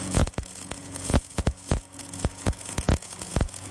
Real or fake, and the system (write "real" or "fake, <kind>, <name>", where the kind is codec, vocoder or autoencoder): fake, vocoder, Vocos